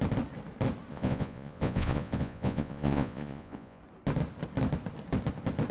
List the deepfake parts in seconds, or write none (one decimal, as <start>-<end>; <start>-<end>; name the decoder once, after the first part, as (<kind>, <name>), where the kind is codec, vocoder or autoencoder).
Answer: 0.9-3.8 (vocoder, Vocos)